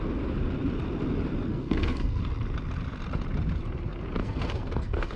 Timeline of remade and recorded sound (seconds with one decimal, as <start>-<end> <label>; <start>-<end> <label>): 0.0-1.5 recorded; 1.5-2.2 remade; 2.2-4.2 recorded; 4.2-5.2 remade